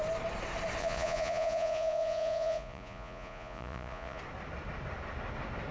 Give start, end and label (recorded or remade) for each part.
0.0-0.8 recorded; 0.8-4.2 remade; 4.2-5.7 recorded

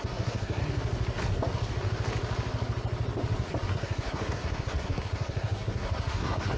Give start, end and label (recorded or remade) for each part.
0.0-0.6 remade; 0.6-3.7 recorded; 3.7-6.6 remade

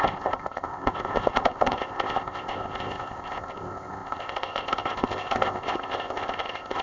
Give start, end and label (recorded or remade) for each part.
0.0-6.8 remade

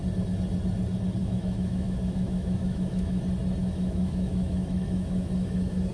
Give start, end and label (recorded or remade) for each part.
0.0-1.2 recorded; 1.2-3.2 remade; 3.2-3.6 recorded; 3.6-5.9 remade